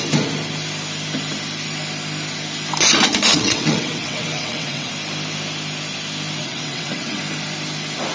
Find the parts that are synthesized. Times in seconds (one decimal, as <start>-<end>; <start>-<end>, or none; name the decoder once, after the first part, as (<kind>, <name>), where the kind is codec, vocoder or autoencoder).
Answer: 3.3-4.9 (vocoder, WaveNeXt); 6.4-7.2